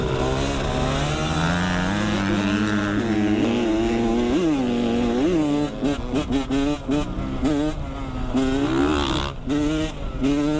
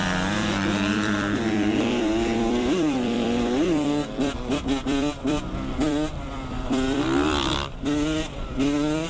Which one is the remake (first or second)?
second